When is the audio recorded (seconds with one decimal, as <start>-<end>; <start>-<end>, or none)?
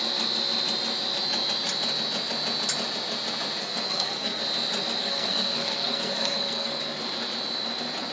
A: 0.0-3.6; 4.4-5.0; 6.8-8.1